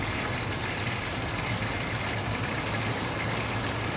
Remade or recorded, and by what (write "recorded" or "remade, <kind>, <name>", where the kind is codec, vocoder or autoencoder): recorded